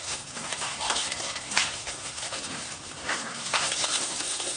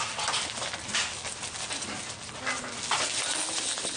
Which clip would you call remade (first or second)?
first